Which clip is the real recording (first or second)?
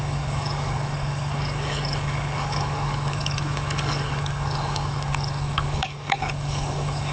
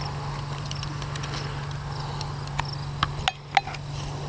second